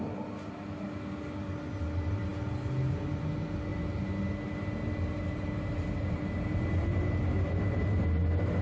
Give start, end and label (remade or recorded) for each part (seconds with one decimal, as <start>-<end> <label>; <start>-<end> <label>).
0.0-8.6 recorded